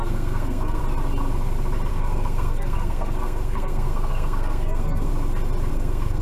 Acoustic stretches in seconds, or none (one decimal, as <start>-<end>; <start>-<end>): 0.8-1.9; 5.1-5.7